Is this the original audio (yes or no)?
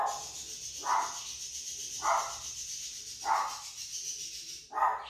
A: yes